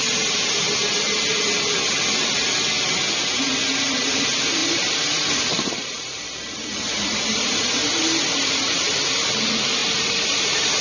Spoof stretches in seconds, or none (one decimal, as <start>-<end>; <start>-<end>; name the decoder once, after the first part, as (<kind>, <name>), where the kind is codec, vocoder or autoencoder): 4.6-9.3 (vocoder, BigVGAN v2); 9.8-10.8